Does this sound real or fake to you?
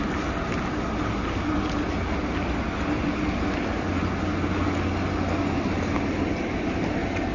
real